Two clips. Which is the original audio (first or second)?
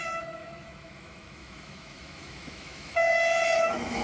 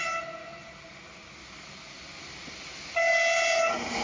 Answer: second